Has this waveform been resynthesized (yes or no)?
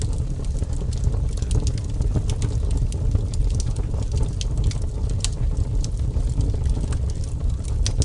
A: no